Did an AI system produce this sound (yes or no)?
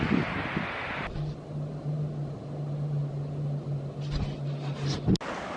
no